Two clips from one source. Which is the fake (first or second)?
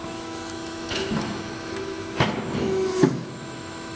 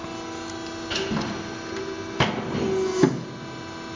first